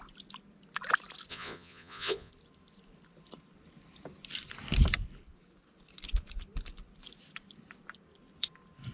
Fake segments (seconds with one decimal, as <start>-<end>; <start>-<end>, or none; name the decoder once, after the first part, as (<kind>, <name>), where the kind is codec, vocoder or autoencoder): 1.3-2.3 (vocoder, Vocos)